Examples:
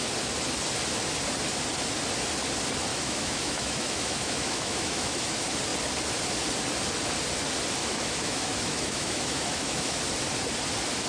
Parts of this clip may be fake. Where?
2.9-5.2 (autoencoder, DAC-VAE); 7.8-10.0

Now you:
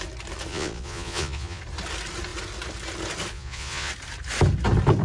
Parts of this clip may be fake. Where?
0.5-1.6 (vocoder, Vocos); 3.3-3.9

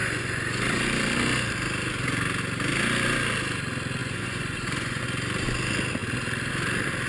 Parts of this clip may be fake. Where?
0.0-0.8 (vocoder, Vocos); 4.0-5.0

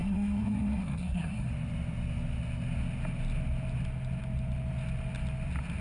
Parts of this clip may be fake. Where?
0.0-1.5 (codec, SNAC)

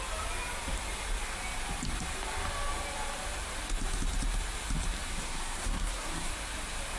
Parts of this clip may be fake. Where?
5.1-6.3 (codec, SNAC)

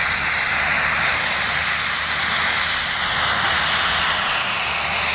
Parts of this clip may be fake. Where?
none

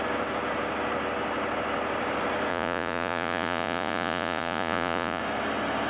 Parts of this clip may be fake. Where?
2.5-5.2 (vocoder, Vocos)